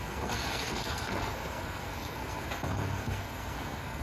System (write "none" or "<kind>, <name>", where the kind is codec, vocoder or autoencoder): codec, SNAC